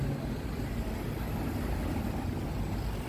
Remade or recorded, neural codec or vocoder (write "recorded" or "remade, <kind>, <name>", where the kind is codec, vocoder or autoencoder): recorded